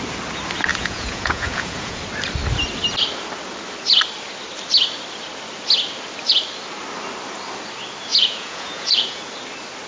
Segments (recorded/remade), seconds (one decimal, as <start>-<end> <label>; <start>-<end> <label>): 0.0-0.7 recorded; 0.7-2.0 remade; 2.0-8.1 recorded; 8.1-9.2 remade; 9.2-9.9 recorded